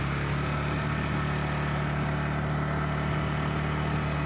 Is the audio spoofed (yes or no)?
no